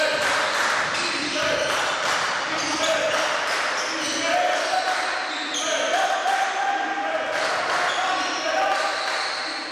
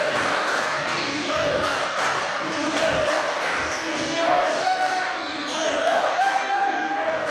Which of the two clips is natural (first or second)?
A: first